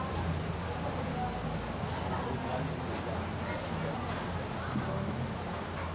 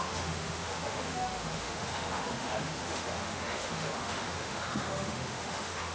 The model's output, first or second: second